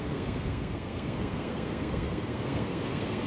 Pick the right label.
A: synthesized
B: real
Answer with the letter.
A